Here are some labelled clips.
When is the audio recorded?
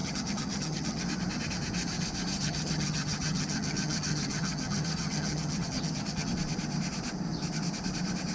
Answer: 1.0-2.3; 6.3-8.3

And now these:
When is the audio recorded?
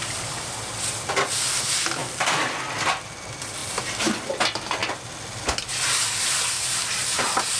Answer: 0.0-7.6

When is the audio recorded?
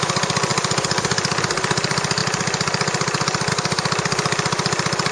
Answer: 0.0-5.1